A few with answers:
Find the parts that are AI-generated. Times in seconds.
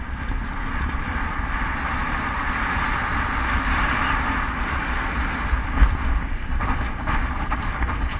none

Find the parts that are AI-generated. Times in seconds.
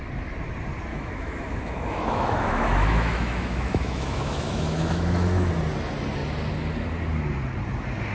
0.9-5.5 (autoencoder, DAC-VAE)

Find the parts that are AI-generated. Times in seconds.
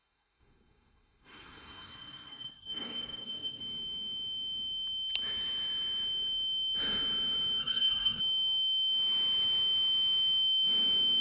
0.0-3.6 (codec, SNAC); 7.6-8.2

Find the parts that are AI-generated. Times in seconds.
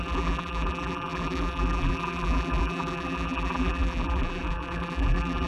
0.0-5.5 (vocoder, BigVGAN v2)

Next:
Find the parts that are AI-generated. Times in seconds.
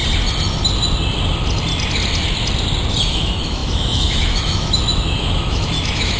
3.1-6.2 (autoencoder, DAC-VAE)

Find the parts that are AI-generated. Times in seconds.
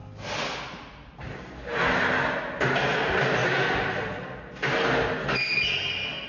none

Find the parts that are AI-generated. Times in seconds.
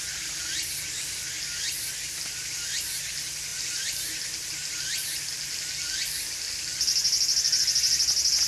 3.5-4.2 (vocoder, BigVGAN v2)